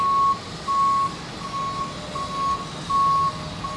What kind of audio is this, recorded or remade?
recorded